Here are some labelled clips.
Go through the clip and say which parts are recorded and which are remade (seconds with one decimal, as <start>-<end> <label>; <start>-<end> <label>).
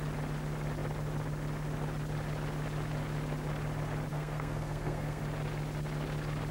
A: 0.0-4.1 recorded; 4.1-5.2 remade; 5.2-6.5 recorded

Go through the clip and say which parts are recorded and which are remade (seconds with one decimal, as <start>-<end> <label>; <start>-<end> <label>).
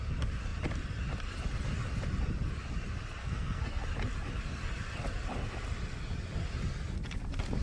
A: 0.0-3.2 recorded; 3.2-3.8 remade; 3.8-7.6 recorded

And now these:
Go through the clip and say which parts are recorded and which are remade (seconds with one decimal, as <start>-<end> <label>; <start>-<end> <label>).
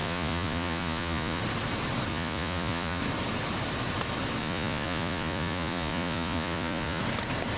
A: 0.0-1.4 remade; 1.4-2.1 recorded; 2.1-3.0 remade; 3.0-4.4 recorded; 4.4-7.0 remade; 7.0-7.6 recorded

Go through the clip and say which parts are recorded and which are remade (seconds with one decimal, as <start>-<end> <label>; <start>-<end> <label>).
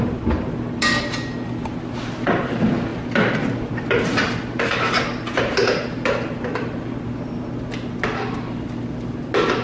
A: 0.0-9.6 recorded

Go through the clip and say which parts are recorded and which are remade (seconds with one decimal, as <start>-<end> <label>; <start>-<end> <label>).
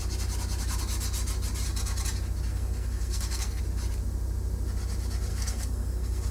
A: 0.0-2.5 recorded; 2.5-3.6 remade; 3.6-5.3 recorded; 5.3-6.3 remade